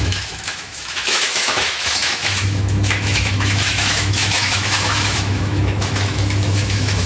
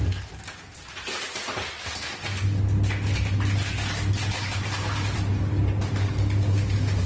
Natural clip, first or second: second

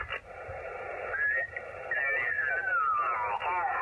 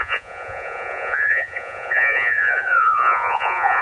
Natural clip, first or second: first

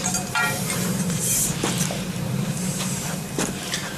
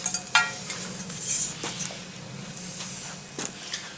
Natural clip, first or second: second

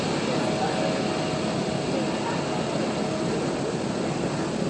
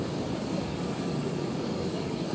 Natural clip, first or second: first